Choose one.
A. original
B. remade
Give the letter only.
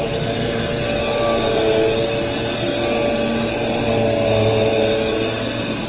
A